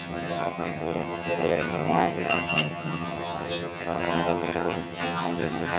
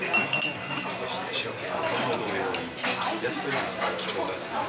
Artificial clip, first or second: first